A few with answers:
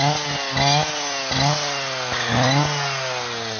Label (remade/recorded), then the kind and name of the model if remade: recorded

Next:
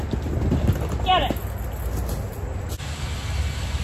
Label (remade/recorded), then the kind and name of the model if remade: recorded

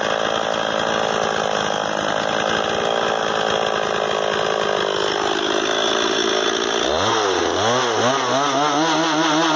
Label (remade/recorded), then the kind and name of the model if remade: recorded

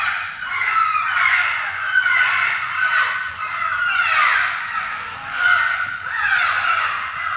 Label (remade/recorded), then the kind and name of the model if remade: remade, vocoder, Vocos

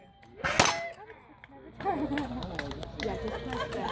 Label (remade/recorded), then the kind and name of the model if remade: recorded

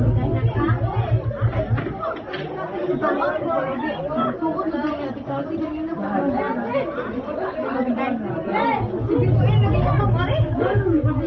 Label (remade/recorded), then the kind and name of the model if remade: recorded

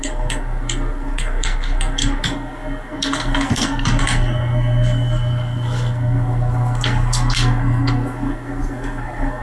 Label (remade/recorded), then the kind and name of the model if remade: remade, codec, SNAC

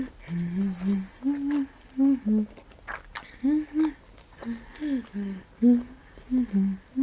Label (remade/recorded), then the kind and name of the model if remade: recorded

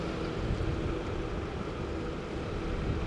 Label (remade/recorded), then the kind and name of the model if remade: recorded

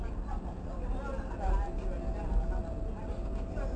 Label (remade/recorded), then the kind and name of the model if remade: recorded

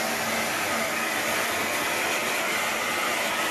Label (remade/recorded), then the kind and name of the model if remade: recorded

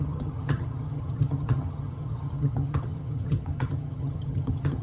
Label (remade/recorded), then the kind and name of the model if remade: remade, vocoder, HiFi-GAN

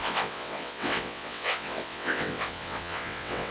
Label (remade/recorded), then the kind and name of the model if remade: remade, vocoder, WaveNeXt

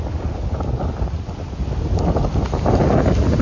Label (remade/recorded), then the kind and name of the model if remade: recorded